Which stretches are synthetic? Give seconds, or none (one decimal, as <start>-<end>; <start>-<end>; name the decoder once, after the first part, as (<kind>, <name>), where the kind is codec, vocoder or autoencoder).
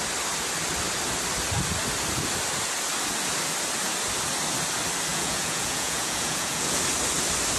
5.1-6.8 (vocoder, Vocos)